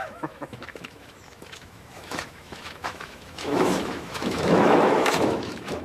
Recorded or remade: remade